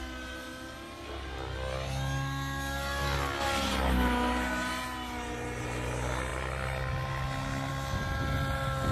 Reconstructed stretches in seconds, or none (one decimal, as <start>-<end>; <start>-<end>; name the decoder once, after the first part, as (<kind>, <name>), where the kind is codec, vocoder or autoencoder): none